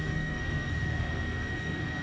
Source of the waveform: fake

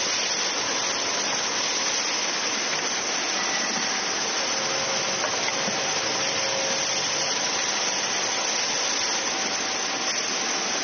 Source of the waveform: real